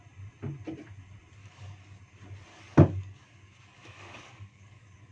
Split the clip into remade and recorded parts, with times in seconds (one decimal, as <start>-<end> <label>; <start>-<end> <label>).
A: 0.0-1.4 recorded; 1.4-2.0 remade; 2.0-2.5 recorded; 2.5-5.1 remade